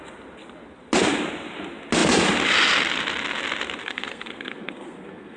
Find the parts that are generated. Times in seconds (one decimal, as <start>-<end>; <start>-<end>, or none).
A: 3.8-5.4